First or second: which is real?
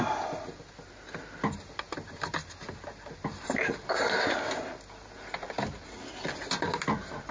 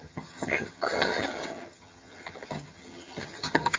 first